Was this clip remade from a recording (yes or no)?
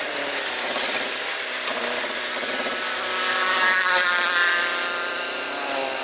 yes